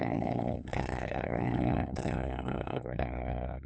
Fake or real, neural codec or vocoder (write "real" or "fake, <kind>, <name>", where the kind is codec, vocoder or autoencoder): fake, codec, SNAC